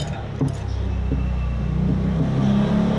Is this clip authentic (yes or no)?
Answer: yes